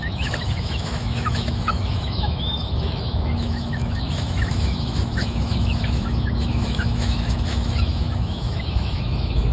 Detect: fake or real fake